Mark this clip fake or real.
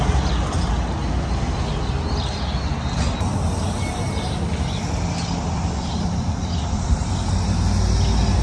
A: real